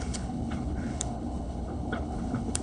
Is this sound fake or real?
fake